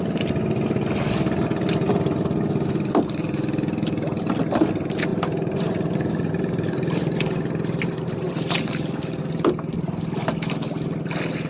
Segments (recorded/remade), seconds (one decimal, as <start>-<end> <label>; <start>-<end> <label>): 0.0-5.1 recorded; 5.1-9.2 remade; 9.2-11.5 recorded